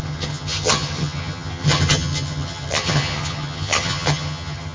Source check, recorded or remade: remade